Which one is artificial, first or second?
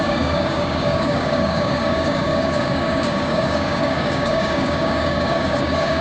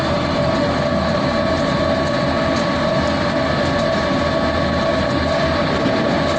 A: first